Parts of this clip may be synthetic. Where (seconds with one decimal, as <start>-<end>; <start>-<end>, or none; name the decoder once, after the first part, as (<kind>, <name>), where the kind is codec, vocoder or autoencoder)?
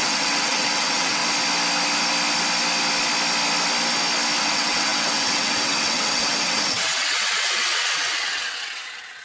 0.0-1.2 (vocoder, WaveNeXt); 4.4-9.2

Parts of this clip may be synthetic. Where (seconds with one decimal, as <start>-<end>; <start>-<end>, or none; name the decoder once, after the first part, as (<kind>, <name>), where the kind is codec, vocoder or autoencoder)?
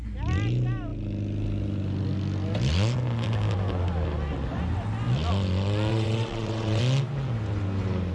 5.9-6.8 (vocoder, WaveNeXt)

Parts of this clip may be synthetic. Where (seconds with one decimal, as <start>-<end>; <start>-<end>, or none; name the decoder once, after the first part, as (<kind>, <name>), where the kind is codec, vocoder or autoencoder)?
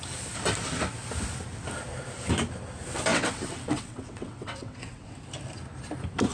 3.1-5.2 (vocoder, WaveNeXt)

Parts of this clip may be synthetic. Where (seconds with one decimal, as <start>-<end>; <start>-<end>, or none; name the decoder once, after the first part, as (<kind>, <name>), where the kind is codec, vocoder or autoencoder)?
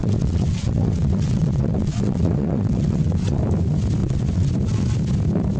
0.0-3.4 (vocoder, WaveNeXt); 4.0-4.5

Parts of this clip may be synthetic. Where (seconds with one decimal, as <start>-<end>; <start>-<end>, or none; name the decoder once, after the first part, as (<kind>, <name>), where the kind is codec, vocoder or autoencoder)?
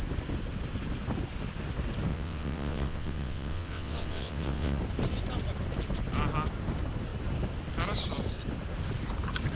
2.1-4.8 (vocoder, WaveNeXt)